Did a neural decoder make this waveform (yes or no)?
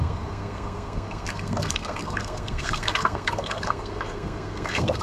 yes